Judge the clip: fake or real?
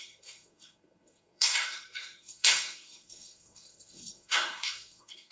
fake